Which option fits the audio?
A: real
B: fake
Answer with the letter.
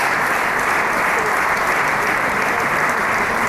B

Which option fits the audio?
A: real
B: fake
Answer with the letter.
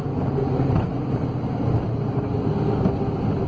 A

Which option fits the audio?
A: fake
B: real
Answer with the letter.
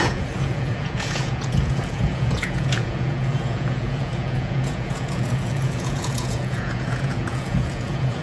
A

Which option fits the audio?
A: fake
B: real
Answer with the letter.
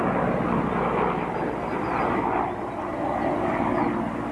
B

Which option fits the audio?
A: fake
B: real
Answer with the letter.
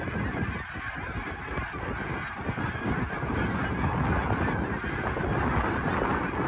B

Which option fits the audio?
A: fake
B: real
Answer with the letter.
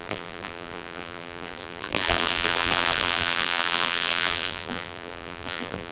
A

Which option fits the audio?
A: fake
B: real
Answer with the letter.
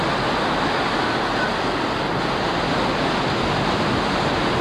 B